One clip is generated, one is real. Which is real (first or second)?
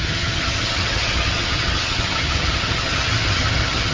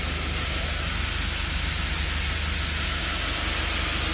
second